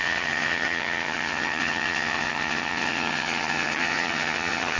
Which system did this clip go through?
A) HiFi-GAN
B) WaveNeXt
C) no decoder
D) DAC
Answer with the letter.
A